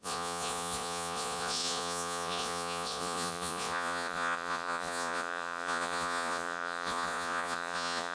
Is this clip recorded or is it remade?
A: remade